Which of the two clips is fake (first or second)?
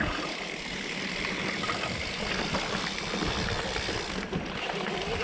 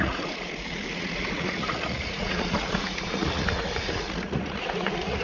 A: second